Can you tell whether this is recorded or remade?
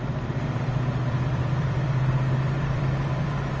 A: remade